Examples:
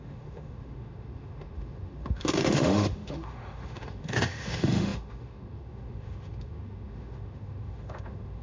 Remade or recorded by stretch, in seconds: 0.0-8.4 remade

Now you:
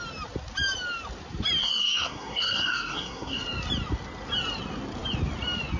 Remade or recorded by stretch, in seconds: 0.0-1.6 recorded; 1.6-3.4 remade; 3.4-5.8 recorded

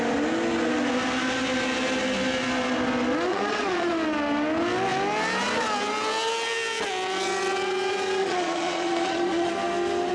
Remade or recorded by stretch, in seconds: 0.0-3.3 recorded; 3.3-3.9 remade; 3.9-8.2 recorded; 8.2-9.5 remade; 9.5-10.1 recorded

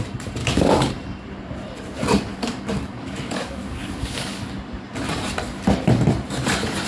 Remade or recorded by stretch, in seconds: 0.0-0.4 recorded; 0.4-0.9 remade; 0.9-2.3 recorded; 2.3-4.4 remade; 4.4-6.9 recorded